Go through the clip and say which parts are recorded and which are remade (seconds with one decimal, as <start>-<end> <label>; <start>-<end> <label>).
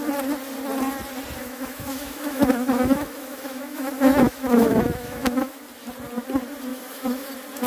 0.0-1.4 recorded; 1.4-5.6 remade; 5.6-6.7 recorded; 6.7-7.3 remade; 7.3-7.7 recorded